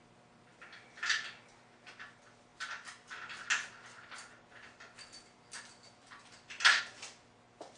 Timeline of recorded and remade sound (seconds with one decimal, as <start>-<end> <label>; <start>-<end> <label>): 0.0-7.8 recorded